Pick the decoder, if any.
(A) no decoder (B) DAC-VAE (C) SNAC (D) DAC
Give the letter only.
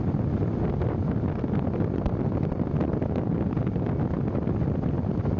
A